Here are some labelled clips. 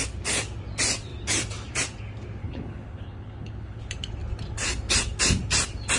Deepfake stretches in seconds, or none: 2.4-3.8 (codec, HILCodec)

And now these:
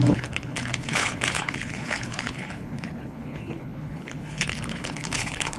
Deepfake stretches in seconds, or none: 0.0-5.6 (codec, HILCodec)